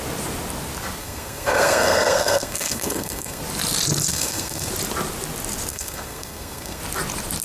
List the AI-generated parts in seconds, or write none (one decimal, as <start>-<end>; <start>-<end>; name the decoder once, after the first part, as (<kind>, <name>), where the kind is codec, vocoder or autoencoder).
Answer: 1.0-3.4 (codec, SNAC); 4.1-4.7; 5.7-6.8